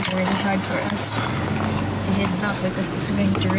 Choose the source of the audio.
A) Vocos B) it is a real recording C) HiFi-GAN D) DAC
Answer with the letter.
B